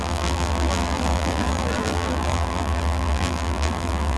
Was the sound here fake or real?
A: fake